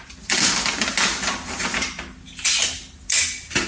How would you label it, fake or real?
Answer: real